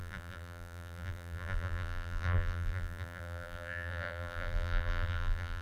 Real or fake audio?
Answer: fake